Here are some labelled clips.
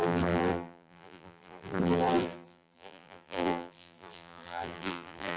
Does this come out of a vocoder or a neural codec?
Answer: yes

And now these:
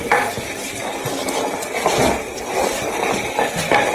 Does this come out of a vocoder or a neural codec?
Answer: no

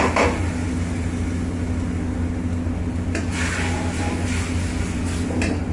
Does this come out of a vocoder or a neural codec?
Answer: no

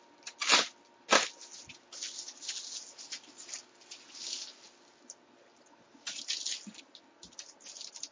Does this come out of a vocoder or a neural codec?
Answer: no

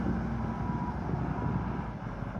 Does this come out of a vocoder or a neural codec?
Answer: no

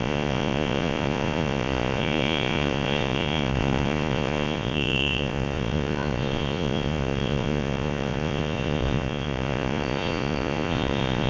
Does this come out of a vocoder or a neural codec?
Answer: yes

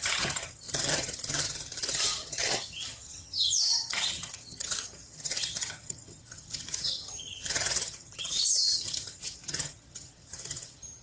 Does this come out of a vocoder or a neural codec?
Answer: yes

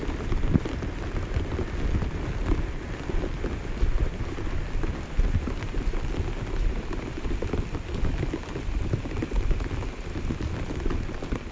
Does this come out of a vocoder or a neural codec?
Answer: no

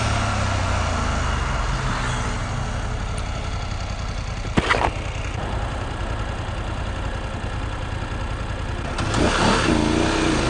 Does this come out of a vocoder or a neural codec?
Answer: no